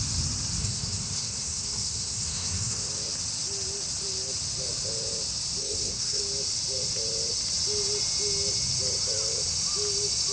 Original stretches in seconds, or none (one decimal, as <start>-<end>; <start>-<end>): 0.0-0.6; 2.9-5.6; 6.2-10.3

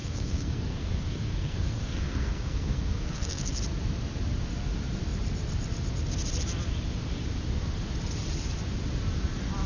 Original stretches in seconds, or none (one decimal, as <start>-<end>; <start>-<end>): 3.6-9.7

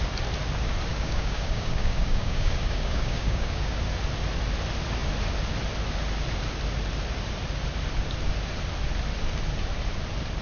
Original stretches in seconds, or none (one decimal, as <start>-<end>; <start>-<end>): 0.0-0.9; 3.8-10.4

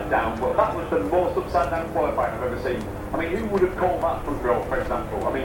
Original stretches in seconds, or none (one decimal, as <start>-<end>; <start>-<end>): 0.0-5.4

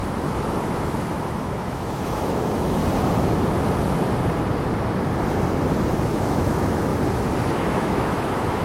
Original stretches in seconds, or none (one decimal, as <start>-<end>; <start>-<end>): 0.0-0.6; 2.8-5.9; 6.9-7.5